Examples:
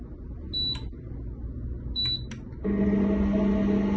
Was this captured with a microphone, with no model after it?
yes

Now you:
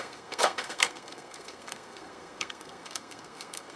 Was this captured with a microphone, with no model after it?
no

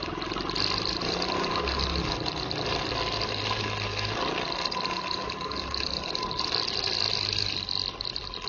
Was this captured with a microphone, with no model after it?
yes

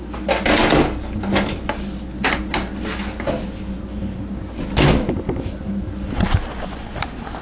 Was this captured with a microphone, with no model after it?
yes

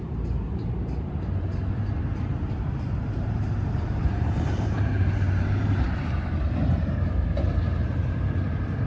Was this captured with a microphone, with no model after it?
no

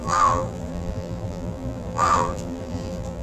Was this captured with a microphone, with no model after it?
no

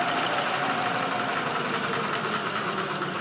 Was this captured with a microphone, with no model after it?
yes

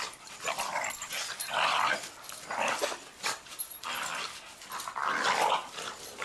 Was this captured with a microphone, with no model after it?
no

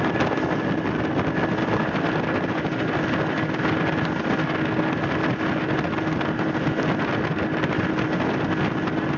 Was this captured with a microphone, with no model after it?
yes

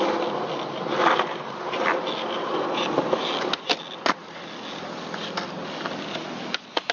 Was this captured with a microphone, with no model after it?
yes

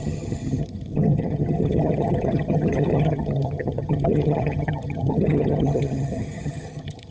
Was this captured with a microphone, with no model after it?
no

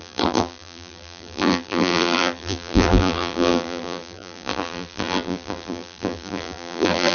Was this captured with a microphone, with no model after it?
no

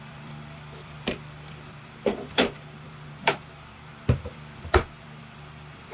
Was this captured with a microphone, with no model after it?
no